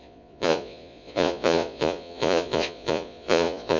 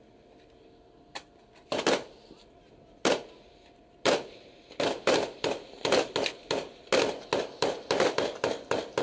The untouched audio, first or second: second